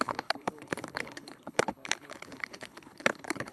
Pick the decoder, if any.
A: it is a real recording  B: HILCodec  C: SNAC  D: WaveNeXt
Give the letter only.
B